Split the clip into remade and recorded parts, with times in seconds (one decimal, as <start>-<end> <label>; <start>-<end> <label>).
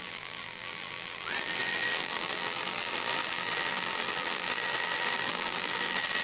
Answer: 0.0-6.2 remade